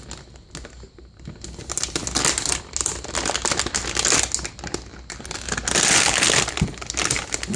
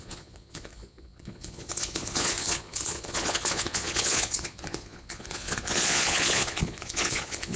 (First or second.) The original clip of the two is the first